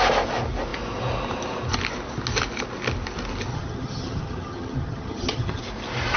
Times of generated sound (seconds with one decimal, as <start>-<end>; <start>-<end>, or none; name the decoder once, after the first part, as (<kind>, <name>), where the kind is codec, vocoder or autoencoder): 3.5-5.6 (vocoder, HiFi-GAN)